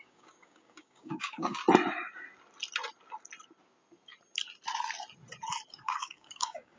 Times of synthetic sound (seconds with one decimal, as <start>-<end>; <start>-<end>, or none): 0.0-1.6; 5.7-6.8